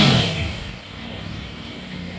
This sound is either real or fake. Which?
fake